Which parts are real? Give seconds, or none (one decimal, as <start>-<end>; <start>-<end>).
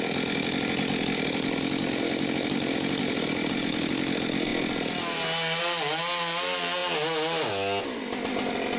0.0-8.8